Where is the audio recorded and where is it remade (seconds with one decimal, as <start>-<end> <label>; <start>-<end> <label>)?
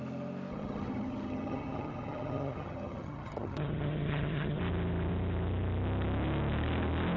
0.0-0.5 recorded; 0.5-4.6 remade; 4.6-7.2 recorded